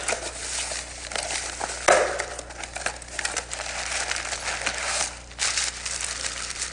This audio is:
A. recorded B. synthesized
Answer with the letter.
A